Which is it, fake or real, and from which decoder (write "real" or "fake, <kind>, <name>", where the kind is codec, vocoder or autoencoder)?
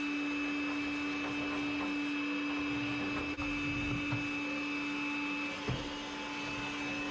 real